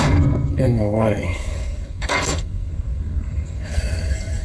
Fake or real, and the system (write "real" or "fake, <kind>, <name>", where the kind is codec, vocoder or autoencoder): fake, codec, SNAC